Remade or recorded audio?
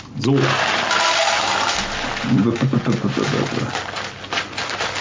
recorded